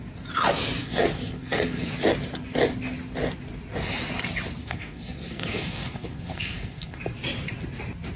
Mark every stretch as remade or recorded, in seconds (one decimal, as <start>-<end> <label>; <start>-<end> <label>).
0.0-0.8 recorded; 0.8-1.9 remade; 1.9-4.6 recorded; 4.6-7.0 remade; 7.0-8.2 recorded